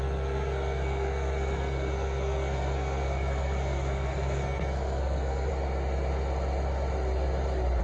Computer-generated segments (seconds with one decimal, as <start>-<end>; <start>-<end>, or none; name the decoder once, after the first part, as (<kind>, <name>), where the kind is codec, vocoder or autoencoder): 0.0-5.5 (codec, SNAC)